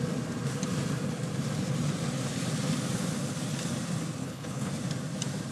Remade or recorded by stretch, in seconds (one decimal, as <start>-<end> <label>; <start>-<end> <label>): 0.0-4.2 recorded; 4.2-4.7 remade; 4.7-5.5 recorded